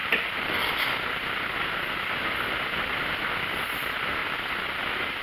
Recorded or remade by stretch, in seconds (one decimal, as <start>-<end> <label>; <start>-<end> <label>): 0.0-5.2 recorded